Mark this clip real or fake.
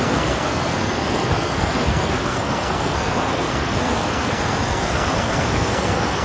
fake